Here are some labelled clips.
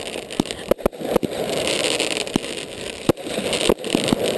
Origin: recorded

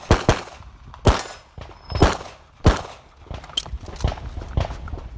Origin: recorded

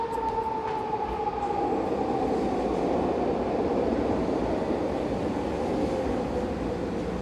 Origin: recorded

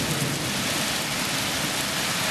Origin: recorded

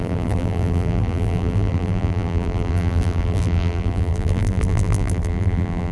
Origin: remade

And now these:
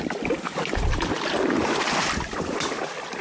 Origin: remade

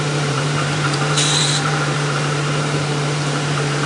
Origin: remade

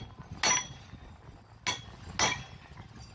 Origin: recorded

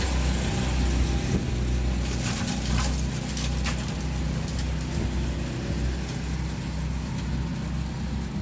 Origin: recorded